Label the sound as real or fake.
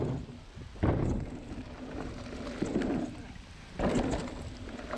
real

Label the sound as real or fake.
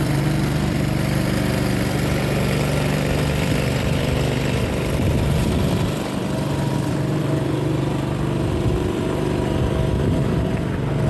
fake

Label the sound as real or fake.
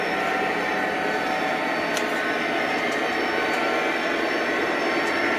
real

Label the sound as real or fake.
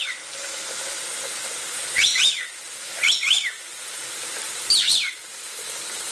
fake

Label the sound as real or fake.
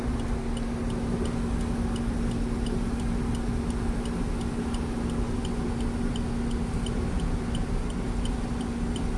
real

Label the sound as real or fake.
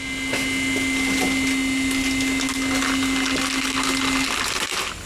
real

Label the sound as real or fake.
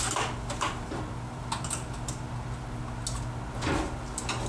real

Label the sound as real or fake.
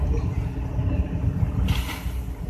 real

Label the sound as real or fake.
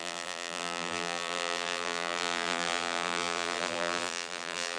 fake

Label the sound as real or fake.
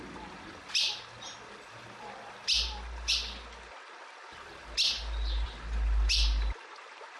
real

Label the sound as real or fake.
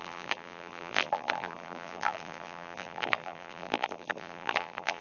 fake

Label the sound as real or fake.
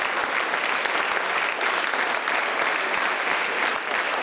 fake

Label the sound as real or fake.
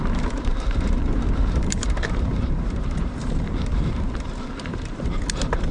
fake